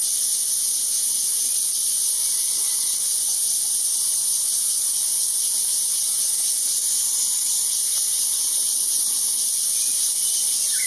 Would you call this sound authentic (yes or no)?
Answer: no